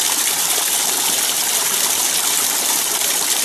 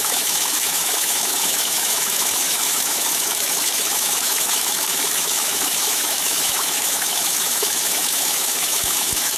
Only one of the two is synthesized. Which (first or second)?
second